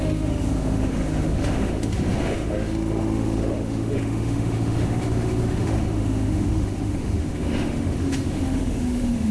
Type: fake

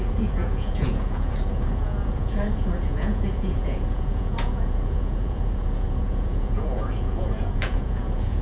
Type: fake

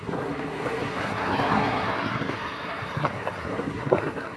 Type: fake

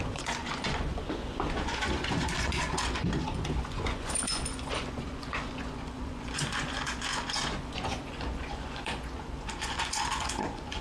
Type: fake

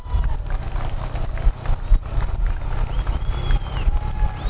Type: real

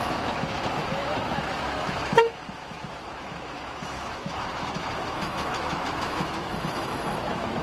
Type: fake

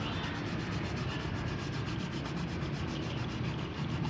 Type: real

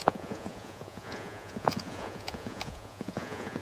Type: fake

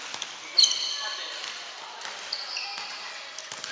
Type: real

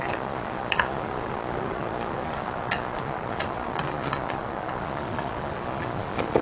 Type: fake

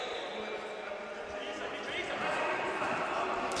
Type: real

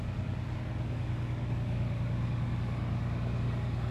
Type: fake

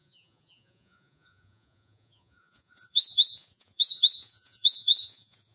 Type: fake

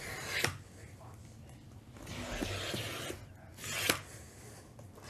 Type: real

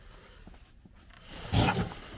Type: real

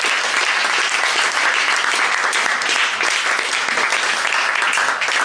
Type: real